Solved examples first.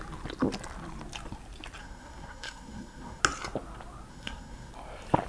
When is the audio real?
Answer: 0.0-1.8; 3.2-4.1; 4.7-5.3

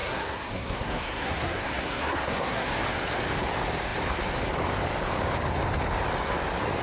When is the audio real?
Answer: 2.7-6.8